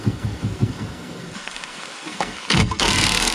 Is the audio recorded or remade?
remade